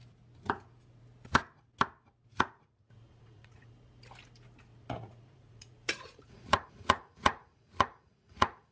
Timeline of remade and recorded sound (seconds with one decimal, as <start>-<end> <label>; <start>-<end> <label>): 0.0-2.3 recorded; 2.3-3.7 remade; 3.7-4.7 recorded; 4.7-8.7 remade